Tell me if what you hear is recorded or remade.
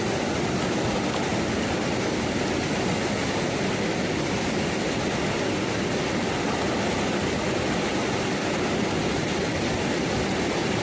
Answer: recorded